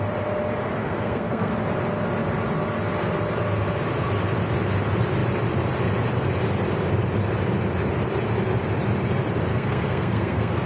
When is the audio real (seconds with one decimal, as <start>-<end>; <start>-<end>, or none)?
0.0-0.8; 1.5-9.5